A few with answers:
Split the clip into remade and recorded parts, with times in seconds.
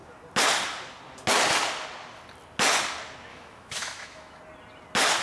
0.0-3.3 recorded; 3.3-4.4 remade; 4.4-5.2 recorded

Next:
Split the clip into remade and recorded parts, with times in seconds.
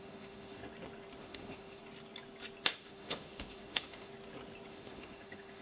0.0-0.6 remade; 0.6-1.2 recorded; 1.2-1.8 remade; 1.8-2.7 recorded; 2.7-4.1 remade; 4.1-4.7 recorded; 4.7-5.6 remade